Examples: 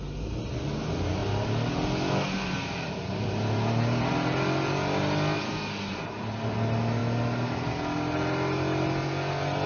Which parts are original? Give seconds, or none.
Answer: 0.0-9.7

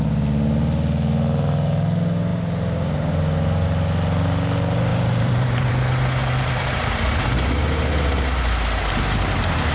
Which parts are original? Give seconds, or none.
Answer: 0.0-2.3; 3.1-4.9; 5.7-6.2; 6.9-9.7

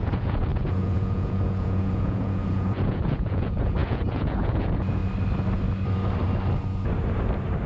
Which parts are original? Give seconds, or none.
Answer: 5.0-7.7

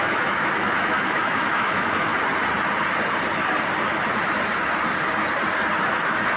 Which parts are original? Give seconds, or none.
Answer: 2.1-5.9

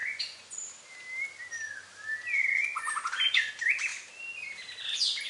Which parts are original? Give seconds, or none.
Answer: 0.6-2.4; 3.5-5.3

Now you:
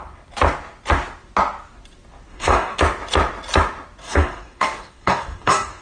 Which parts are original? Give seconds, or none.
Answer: 0.0-2.3; 2.8-4.0

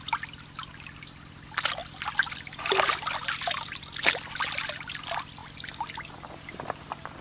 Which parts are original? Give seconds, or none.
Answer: 0.0-7.2